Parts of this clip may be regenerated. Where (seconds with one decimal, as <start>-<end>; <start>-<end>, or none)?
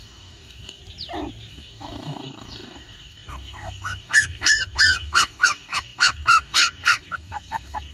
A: 0.0-0.8; 1.5-7.9